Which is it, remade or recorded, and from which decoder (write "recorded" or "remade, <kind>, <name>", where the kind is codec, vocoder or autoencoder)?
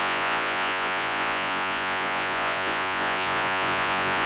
remade, vocoder, Vocos